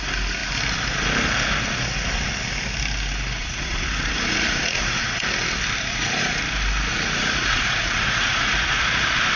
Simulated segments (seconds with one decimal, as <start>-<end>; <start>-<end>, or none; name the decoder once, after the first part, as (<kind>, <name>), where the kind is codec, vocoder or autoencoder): 3.4-5.0 (vocoder, Vocos); 5.9-6.4; 6.9-8.8